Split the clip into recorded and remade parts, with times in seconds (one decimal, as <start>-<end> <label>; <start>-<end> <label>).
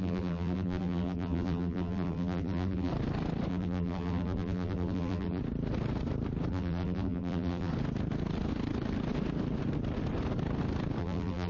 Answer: 0.0-2.9 remade; 2.9-3.5 recorded; 3.5-5.4 remade; 5.4-6.5 recorded; 6.5-7.7 remade; 7.7-11.0 recorded; 11.0-11.5 remade